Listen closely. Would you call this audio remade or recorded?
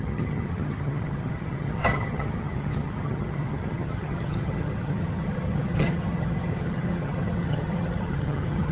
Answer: remade